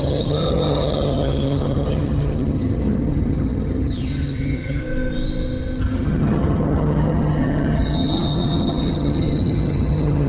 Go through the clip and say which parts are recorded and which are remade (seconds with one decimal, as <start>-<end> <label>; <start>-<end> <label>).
0.0-4.8 remade; 4.8-5.8 recorded; 5.8-10.3 remade

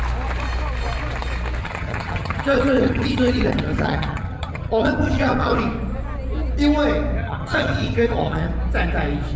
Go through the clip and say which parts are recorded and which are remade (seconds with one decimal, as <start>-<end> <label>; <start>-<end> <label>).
0.0-1.6 recorded; 1.6-5.6 remade; 5.6-7.2 recorded; 7.2-8.5 remade; 8.5-9.4 recorded

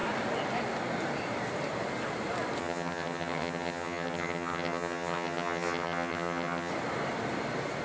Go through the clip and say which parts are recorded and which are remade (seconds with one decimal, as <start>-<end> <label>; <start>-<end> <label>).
0.0-2.6 recorded; 2.6-6.7 remade; 6.7-7.8 recorded

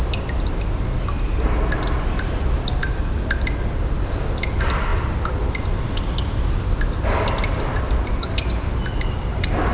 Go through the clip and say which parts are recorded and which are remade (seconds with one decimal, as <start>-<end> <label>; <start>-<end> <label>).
0.0-9.7 recorded